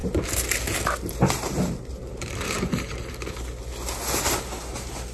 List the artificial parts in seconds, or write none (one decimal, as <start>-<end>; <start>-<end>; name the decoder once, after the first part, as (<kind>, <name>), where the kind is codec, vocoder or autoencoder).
0.0-3.1 (vocoder, BigVGAN v2)